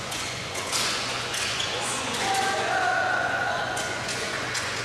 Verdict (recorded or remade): remade